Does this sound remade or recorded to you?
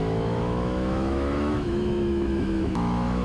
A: remade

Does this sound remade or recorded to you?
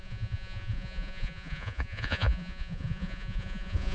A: remade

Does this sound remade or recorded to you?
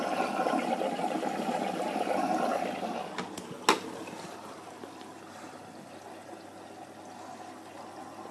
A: recorded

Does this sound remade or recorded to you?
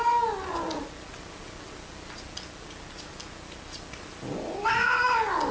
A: recorded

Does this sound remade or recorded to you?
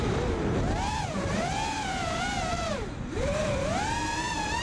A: remade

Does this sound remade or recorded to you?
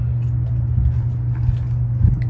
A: recorded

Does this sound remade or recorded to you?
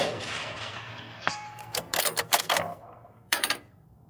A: remade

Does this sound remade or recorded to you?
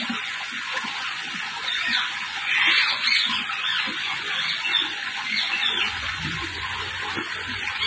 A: remade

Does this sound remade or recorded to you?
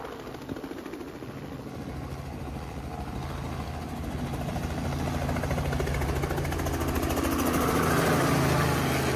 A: recorded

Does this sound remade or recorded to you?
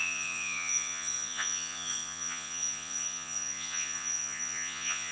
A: remade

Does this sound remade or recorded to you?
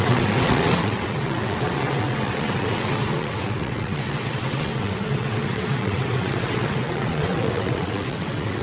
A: remade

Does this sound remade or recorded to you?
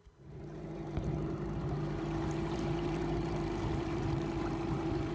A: remade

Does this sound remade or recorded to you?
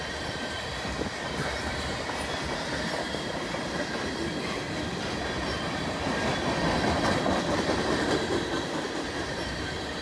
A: remade